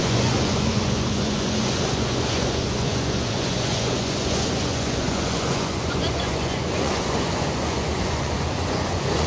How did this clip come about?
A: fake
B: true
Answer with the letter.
A